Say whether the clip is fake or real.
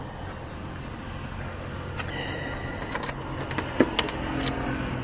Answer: real